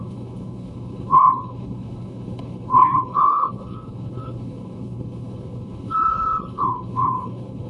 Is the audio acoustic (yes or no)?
no